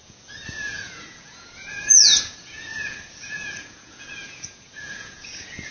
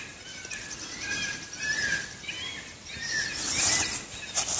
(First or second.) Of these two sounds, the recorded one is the second